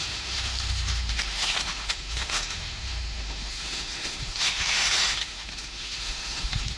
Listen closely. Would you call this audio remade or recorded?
remade